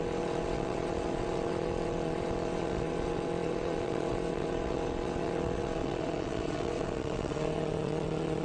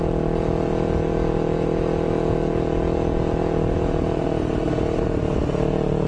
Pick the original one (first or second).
second